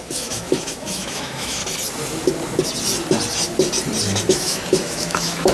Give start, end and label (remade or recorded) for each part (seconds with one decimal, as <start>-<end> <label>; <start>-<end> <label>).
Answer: 0.0-1.6 remade; 1.6-4.3 recorded; 4.3-5.5 remade